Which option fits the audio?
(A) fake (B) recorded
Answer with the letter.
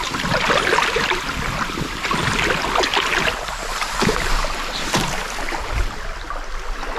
B